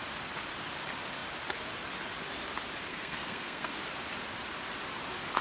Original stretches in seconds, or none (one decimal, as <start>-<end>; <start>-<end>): 0.0-2.9; 3.7-5.4